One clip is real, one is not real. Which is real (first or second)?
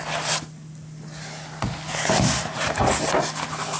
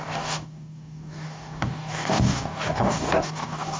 first